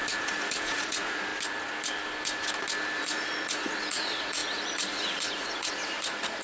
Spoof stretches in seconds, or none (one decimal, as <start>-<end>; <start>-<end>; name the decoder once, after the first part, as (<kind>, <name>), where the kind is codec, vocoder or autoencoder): 0.0-1.3 (vocoder, Vocos); 3.0-6.4